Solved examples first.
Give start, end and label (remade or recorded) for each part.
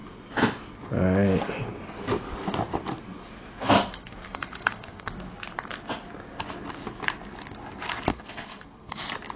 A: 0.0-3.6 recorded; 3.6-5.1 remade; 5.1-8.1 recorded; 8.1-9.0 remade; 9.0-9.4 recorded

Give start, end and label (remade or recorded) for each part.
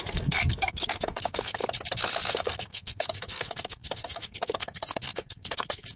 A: 0.0-1.6 remade; 1.6-2.3 recorded; 2.3-6.0 remade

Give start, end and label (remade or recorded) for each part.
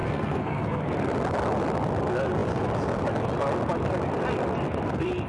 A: 0.0-0.8 remade; 0.8-5.3 recorded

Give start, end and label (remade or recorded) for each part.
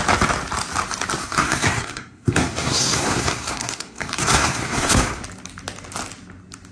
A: 0.0-1.2 recorded; 1.2-5.2 remade; 5.2-6.7 recorded